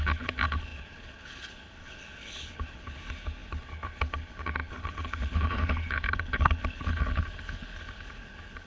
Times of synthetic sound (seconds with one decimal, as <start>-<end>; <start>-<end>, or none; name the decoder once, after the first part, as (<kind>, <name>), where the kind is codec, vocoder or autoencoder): 0.0-8.7 (codec, HILCodec)